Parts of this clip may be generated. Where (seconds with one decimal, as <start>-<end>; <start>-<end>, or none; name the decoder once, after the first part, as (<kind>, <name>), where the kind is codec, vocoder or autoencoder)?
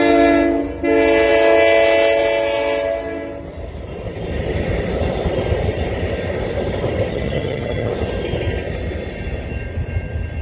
7.1-7.9 (vocoder, HiFi-GAN)